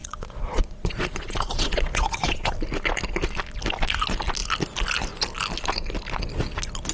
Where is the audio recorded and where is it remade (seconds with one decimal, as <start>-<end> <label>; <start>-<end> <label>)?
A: 0.0-2.5 remade; 2.5-6.9 recorded